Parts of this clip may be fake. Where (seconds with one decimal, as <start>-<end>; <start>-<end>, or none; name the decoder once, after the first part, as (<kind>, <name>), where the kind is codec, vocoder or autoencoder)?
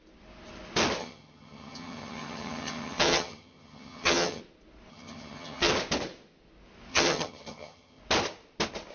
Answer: 1.0-4.4 (vocoder, HiFi-GAN); 4.9-5.7; 6.9-8.0